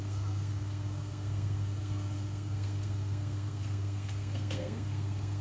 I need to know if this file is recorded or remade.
remade